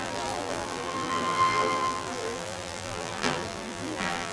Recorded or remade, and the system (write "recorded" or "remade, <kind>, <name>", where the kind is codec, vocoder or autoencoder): remade, vocoder, BigVGAN v2